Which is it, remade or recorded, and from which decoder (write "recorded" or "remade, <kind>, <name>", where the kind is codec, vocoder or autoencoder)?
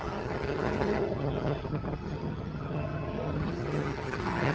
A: remade, vocoder, HiFi-GAN